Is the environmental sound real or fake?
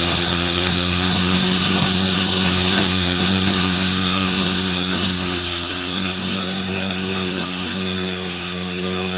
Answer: fake